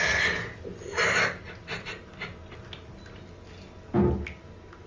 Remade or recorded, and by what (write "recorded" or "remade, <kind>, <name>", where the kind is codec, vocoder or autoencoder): recorded